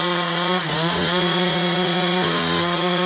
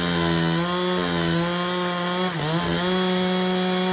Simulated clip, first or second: first